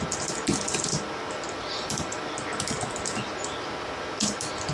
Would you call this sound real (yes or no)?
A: yes